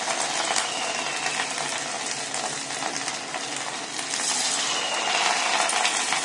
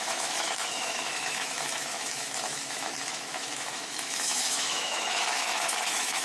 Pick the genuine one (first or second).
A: first